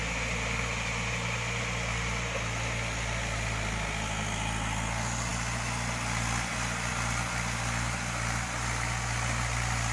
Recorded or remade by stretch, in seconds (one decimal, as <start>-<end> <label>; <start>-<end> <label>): 0.0-9.9 recorded